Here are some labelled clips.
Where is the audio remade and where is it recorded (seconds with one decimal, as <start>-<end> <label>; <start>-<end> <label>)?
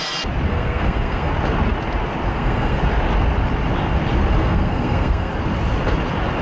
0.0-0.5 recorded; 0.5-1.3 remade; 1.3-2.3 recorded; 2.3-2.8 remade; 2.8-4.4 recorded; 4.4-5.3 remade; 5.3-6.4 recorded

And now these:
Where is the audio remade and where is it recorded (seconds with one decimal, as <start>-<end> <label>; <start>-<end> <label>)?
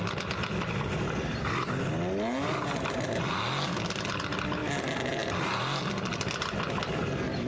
0.0-7.5 recorded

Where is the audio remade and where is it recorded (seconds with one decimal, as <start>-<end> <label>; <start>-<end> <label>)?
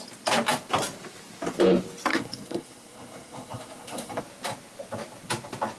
0.0-2.1 recorded; 2.1-4.2 remade; 4.2-5.8 recorded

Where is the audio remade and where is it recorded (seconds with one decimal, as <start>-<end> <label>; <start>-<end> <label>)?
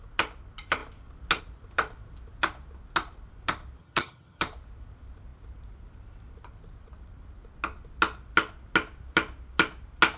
0.0-3.8 recorded; 3.8-4.4 remade; 4.4-10.2 recorded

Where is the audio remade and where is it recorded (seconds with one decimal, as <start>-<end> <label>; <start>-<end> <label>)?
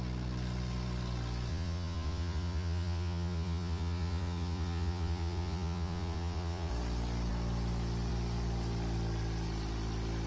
0.0-1.5 recorded; 1.5-6.7 remade; 6.7-10.3 recorded